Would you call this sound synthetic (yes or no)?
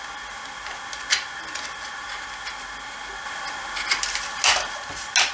no